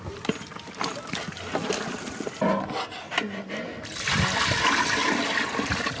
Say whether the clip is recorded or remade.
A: recorded